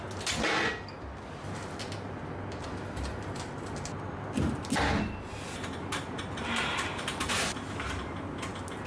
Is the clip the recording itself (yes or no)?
yes